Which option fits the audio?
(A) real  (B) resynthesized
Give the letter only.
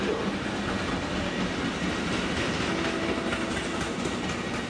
A